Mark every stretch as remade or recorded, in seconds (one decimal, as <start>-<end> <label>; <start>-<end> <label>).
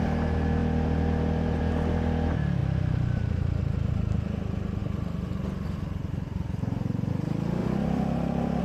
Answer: 0.0-7.6 recorded; 7.6-8.6 remade